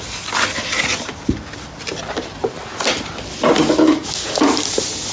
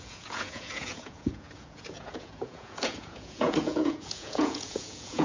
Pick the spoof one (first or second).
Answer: second